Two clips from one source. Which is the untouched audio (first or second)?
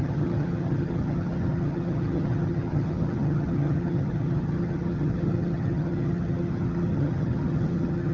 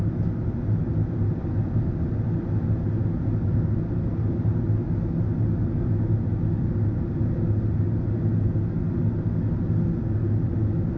second